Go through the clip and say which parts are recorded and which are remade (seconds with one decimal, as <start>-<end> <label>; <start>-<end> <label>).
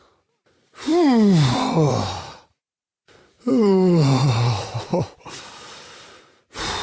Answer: 0.0-0.9 remade; 0.9-1.9 recorded; 1.9-4.9 remade; 4.9-5.4 recorded; 5.4-6.8 remade